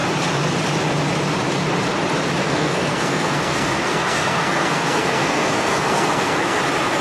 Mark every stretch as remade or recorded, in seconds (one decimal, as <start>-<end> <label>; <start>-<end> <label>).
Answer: 0.0-2.4 recorded; 2.4-6.6 remade; 6.6-7.0 recorded